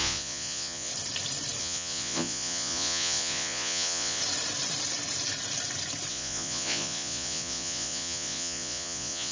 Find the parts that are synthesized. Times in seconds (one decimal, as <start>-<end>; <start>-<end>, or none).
0.0-0.9; 1.6-4.2; 6.1-9.3